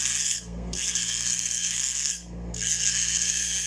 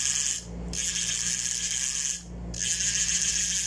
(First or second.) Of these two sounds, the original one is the second